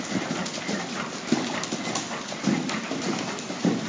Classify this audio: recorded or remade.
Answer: recorded